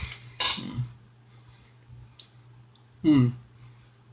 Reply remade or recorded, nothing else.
recorded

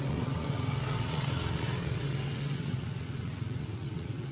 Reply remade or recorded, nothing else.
remade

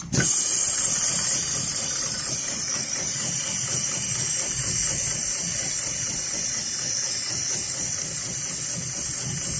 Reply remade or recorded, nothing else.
recorded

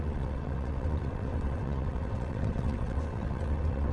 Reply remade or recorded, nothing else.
remade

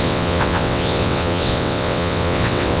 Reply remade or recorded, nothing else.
remade